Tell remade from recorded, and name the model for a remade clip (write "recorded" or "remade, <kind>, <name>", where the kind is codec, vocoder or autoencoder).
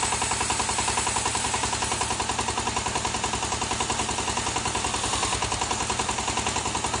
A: recorded